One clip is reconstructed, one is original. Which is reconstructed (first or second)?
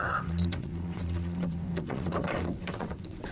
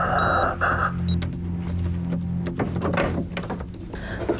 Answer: first